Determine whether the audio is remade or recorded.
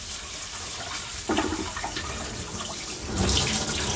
recorded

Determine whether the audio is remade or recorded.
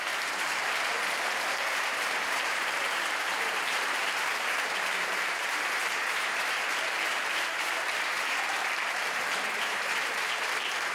remade